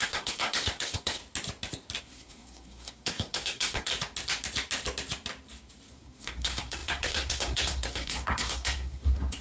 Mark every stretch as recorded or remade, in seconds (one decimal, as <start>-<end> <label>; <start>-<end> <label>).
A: 0.0-1.2 remade; 1.2-2.0 recorded; 2.0-3.9 remade; 3.9-5.9 recorded; 5.9-9.4 remade

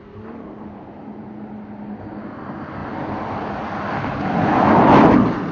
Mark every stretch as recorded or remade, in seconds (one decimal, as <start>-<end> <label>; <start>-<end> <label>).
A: 0.0-5.5 recorded

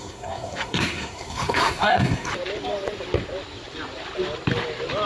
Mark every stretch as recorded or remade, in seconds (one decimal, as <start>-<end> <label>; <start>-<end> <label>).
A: 0.0-2.3 remade; 2.3-5.1 recorded

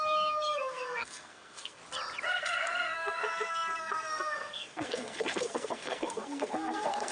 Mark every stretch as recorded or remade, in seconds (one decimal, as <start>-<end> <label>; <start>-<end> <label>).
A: 0.0-1.8 remade; 1.8-2.3 recorded; 2.3-7.1 remade

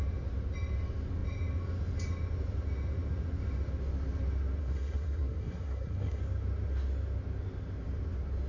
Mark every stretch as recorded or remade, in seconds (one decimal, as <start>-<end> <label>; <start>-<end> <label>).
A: 0.0-4.6 recorded; 4.6-6.2 remade; 6.2-8.5 recorded